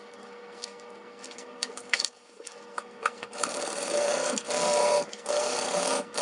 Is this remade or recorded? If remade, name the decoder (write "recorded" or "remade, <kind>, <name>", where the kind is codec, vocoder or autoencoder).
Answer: remade, codec, SNAC